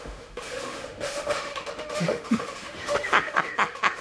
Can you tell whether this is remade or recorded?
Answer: remade